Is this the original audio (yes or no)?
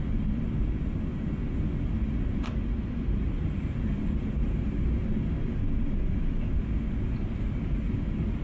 yes